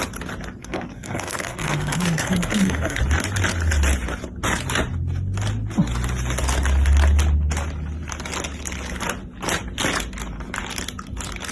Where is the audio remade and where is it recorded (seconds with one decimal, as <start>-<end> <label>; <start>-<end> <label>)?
0.0-0.6 recorded; 0.6-3.0 remade; 3.0-11.5 recorded